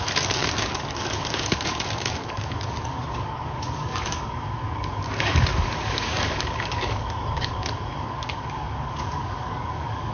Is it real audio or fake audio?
fake